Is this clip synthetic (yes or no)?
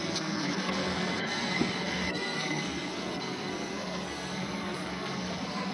yes